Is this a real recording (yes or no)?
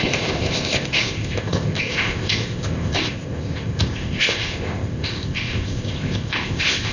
no